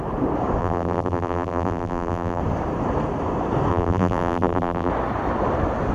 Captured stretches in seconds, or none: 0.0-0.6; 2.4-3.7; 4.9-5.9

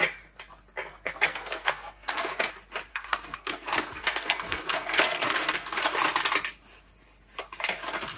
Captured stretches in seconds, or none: 0.0-0.9; 2.5-2.9; 5.8-8.2